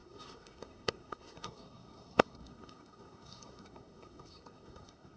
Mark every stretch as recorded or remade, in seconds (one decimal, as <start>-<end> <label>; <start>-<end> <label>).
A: 0.0-5.2 remade